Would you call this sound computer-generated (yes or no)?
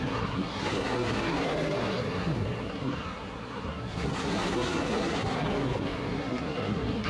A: yes